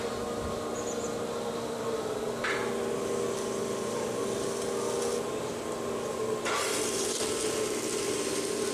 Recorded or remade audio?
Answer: recorded